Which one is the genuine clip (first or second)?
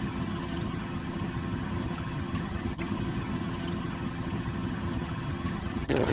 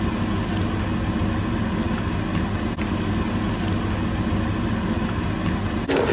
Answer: second